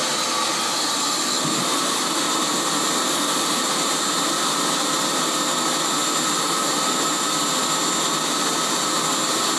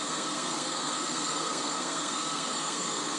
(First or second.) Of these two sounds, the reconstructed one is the second